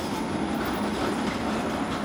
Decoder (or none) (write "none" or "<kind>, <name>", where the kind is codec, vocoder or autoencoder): none